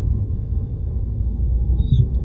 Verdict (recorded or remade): remade